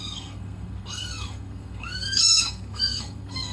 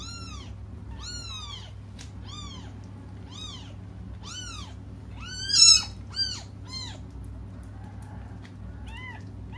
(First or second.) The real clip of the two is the second